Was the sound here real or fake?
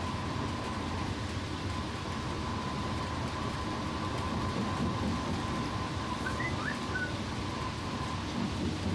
real